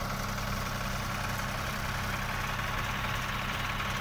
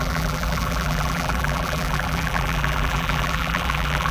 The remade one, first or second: second